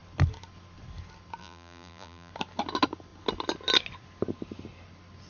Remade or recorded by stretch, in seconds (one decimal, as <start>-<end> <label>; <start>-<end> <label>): 0.0-1.4 recorded; 1.4-2.3 remade; 2.3-5.3 recorded